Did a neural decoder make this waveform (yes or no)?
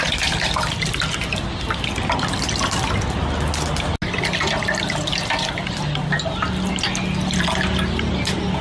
no